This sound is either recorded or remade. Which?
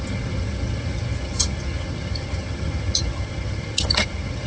remade